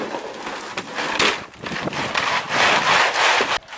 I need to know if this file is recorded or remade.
recorded